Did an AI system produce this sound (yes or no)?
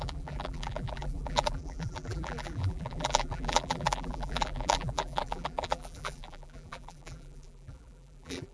yes